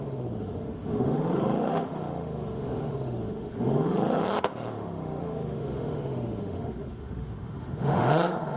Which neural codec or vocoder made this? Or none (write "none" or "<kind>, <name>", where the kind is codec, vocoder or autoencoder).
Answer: autoencoder, DAC-VAE